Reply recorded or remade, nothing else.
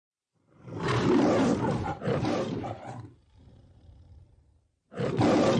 remade